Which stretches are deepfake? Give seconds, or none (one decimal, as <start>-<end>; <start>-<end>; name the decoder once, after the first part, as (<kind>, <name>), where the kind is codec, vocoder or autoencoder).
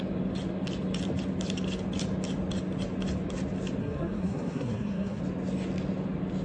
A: 3.8-5.2 (codec, SNAC)